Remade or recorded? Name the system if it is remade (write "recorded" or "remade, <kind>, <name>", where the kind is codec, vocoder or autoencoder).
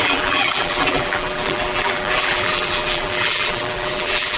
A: remade, vocoder, BigVGAN v2